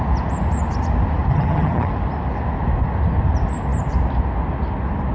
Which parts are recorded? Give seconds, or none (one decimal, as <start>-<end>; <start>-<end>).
0.0-1.3; 1.9-5.1